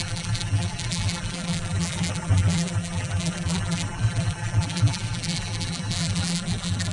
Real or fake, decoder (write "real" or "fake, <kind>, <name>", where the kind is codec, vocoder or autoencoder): fake, vocoder, BigVGAN v2